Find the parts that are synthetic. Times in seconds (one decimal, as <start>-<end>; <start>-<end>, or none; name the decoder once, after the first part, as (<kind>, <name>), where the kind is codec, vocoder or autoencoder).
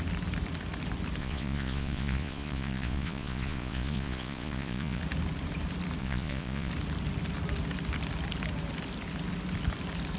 1.2-5.0 (vocoder, Vocos); 6.0-6.7